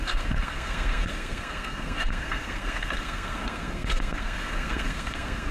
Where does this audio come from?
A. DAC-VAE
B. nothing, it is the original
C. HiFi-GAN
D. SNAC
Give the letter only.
D